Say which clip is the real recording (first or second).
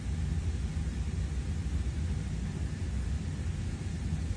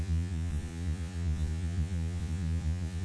first